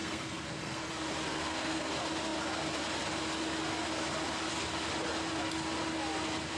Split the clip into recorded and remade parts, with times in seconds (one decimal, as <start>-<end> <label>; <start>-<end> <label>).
0.0-0.9 remade; 0.9-1.3 recorded; 1.3-1.9 remade; 1.9-6.6 recorded